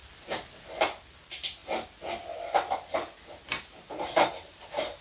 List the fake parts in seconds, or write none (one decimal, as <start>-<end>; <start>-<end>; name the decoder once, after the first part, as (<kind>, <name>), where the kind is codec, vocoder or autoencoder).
none